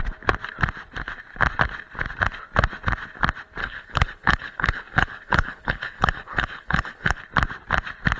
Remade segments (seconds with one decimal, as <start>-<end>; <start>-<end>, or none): 3.6-7.2